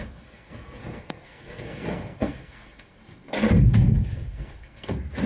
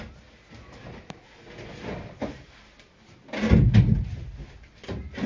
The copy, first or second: first